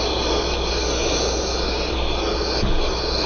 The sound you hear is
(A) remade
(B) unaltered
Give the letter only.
B